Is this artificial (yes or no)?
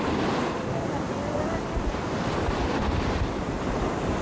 yes